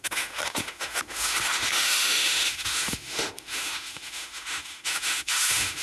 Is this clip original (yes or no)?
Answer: no